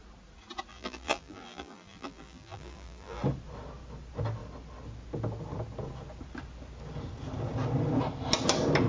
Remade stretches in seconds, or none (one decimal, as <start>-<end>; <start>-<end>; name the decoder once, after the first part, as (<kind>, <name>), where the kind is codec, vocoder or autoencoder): 0.7-3.2 (vocoder, BigVGAN v2)